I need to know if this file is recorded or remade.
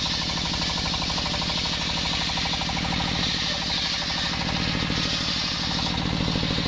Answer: recorded